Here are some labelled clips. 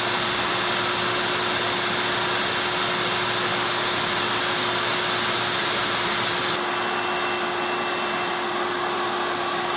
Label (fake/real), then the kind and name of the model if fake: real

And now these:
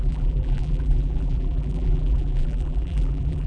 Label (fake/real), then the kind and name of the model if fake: fake, vocoder, BigVGAN v2